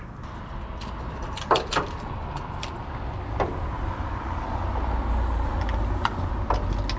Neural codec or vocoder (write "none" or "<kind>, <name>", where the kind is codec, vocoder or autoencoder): none